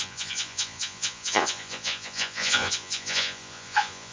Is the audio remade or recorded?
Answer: remade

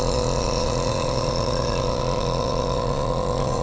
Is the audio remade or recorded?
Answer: remade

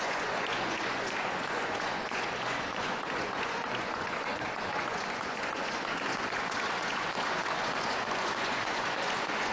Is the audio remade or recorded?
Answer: remade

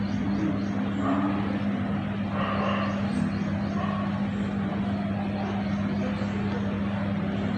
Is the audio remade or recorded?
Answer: recorded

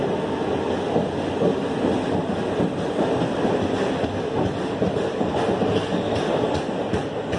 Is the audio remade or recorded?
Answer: recorded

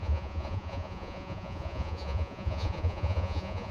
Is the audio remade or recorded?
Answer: remade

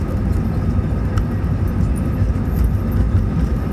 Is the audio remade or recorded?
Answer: recorded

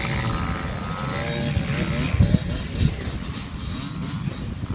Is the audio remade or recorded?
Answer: recorded